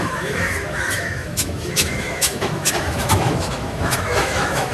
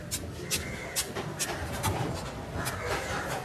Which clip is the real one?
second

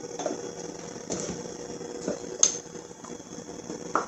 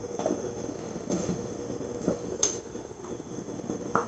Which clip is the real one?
first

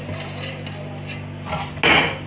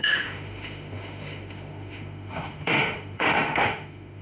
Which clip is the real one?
first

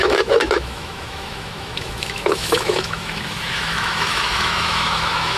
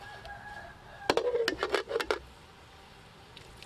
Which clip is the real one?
second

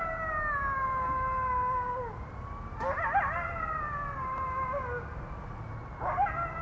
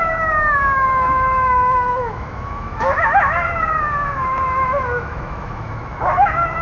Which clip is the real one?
first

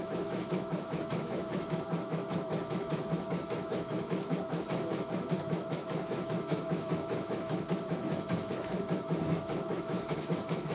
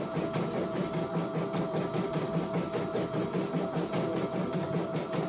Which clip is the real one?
second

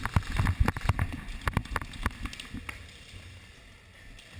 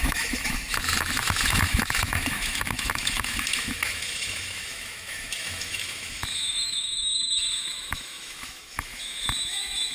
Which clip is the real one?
first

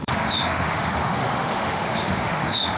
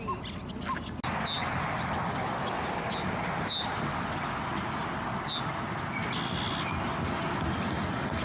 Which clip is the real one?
second